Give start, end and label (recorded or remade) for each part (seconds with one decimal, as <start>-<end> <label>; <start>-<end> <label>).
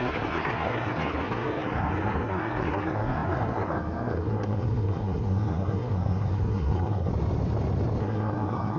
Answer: 0.0-7.1 remade; 7.1-8.0 recorded; 8.0-8.8 remade